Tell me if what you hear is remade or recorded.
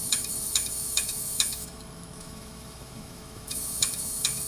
remade